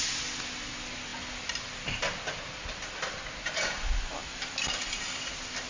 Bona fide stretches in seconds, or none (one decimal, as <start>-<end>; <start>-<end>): 0.0-5.7